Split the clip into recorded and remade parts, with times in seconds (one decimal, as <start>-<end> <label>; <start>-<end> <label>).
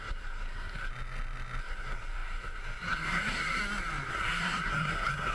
0.0-0.9 remade; 0.9-1.6 recorded; 1.6-3.6 remade; 3.6-4.1 recorded; 4.1-5.3 remade